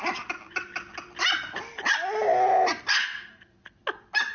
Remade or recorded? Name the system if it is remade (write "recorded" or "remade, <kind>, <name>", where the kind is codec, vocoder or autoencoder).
recorded